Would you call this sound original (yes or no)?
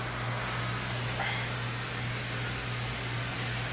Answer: yes